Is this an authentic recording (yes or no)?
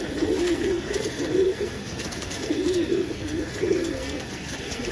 no